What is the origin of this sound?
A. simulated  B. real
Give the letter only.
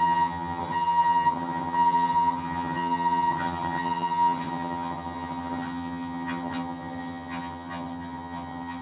A